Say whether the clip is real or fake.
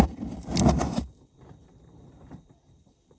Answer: fake